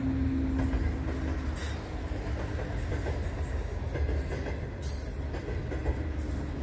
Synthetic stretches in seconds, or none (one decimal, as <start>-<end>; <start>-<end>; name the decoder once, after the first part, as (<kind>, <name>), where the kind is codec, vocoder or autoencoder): none